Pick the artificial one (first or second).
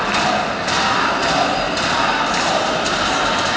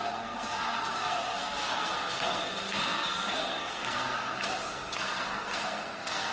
second